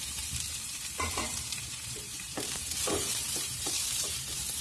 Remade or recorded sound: remade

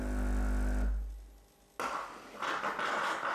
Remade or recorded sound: recorded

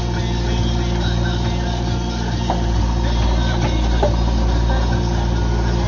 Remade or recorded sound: recorded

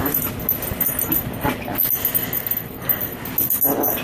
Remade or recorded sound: recorded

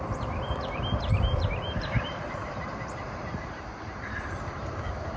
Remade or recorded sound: remade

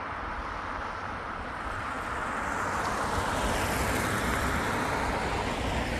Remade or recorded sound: recorded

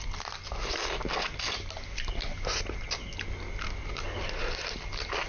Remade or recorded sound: recorded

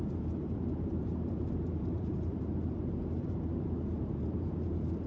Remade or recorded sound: remade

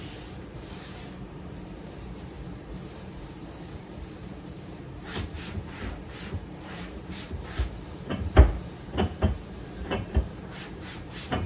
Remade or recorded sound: remade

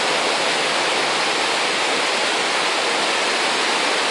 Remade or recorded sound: remade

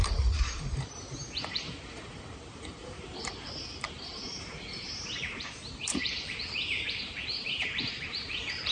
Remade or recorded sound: remade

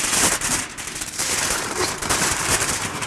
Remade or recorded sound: remade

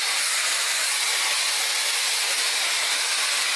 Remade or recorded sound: recorded